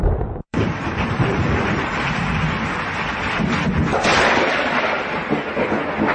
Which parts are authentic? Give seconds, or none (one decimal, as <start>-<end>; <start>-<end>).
2.3-4.1; 4.6-6.1